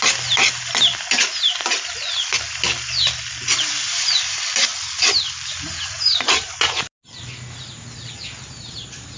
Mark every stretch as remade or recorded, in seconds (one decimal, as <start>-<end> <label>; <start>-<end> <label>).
0.0-9.2 recorded